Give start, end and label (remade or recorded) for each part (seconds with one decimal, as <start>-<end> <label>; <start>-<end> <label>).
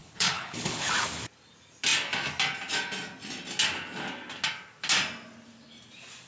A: 0.0-0.9 remade; 0.9-6.3 recorded